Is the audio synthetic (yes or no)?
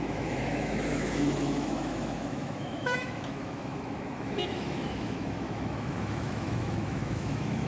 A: yes